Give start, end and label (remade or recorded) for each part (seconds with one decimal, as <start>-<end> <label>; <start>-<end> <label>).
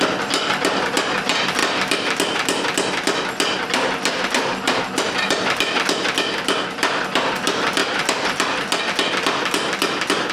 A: 0.0-10.3 recorded